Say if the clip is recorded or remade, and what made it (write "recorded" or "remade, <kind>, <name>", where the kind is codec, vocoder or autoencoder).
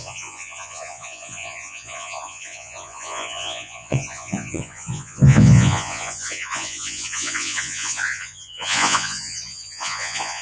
remade, vocoder, Vocos